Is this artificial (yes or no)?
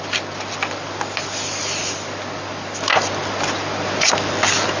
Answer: no